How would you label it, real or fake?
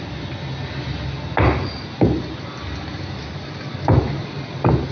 real